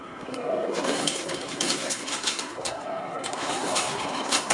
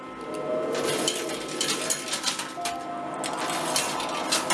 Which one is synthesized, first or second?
first